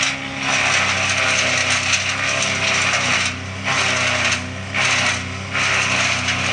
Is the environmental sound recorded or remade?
recorded